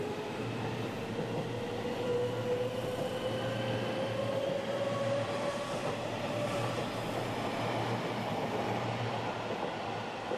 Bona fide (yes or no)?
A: yes